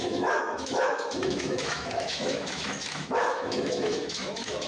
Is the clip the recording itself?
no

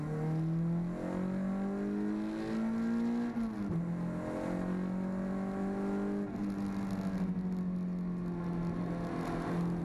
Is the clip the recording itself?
yes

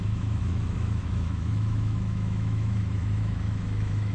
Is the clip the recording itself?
no